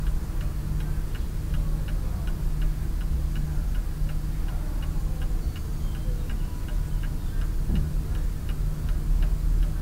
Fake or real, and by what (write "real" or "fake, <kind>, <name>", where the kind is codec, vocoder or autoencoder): real